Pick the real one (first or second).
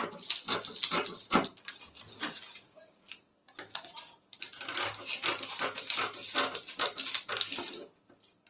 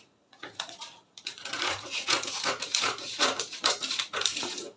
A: first